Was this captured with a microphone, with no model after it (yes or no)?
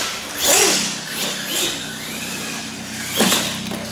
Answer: yes